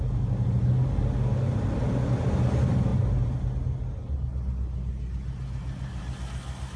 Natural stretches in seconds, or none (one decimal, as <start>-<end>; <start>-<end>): 0.0-6.8